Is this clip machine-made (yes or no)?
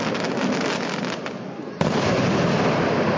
no